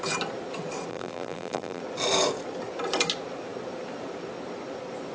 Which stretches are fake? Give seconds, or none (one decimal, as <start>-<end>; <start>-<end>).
0.9-1.8